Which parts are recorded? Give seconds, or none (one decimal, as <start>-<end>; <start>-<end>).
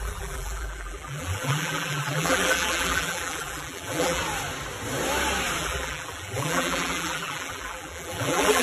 4.2-5.6